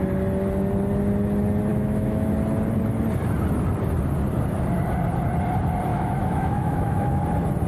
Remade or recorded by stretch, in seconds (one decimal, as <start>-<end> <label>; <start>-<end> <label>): 0.0-1.7 recorded; 1.7-2.3 remade; 2.3-5.9 recorded; 5.9-7.2 remade; 7.2-7.7 recorded